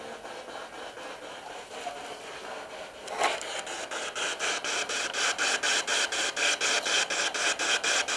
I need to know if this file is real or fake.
real